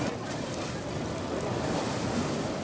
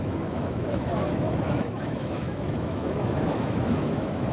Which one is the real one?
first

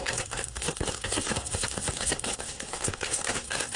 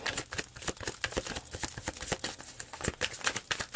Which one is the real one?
second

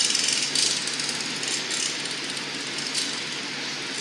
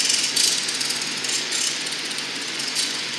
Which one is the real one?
first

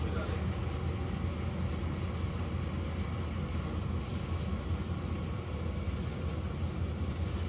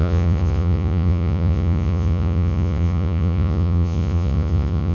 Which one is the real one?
first